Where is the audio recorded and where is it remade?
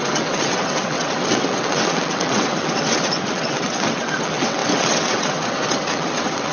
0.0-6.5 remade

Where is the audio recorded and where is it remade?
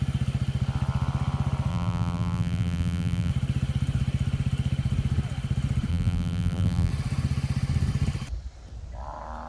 0.0-1.7 recorded; 1.7-3.3 remade; 3.3-5.9 recorded; 5.9-6.9 remade; 6.9-9.5 recorded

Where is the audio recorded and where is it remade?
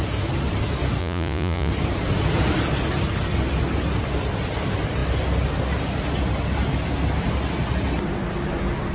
0.0-1.0 recorded; 1.0-1.7 remade; 1.7-8.9 recorded